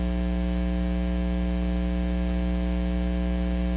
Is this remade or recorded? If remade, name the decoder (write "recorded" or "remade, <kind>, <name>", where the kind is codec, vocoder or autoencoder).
recorded